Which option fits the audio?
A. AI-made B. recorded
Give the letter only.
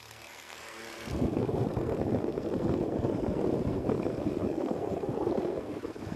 A